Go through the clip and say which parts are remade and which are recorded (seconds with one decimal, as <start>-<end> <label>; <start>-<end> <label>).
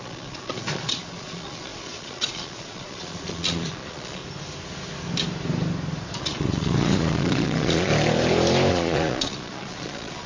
0.0-4.2 remade; 4.2-6.2 recorded; 6.2-7.9 remade; 7.9-8.7 recorded; 8.7-10.3 remade